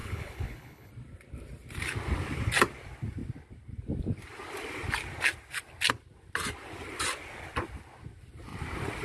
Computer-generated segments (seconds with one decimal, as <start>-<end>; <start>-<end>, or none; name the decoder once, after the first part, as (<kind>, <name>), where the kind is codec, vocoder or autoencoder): 0.0-0.9 (codec, HILCodec)